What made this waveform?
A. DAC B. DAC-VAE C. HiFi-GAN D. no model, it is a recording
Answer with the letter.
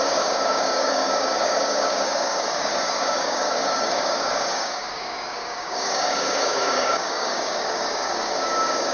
A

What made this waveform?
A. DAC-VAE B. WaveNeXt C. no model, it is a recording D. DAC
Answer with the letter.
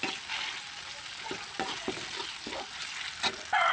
C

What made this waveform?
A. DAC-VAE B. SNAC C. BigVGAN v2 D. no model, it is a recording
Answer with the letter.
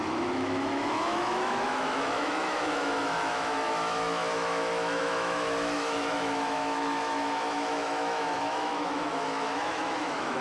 A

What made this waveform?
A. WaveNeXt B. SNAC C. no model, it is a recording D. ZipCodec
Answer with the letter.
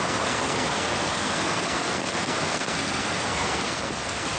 B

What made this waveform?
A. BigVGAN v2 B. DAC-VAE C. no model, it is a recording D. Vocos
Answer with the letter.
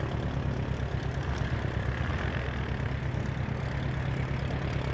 C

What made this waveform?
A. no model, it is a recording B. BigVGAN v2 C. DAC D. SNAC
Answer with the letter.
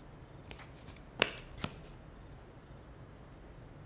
A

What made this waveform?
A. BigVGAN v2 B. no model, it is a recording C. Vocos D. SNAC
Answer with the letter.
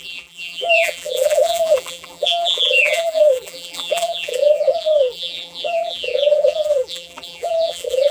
A